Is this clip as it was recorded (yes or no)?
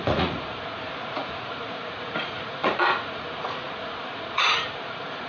no